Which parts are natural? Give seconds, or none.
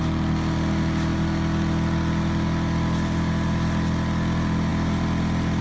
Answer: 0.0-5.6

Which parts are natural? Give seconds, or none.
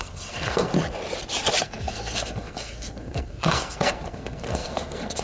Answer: 0.7-1.6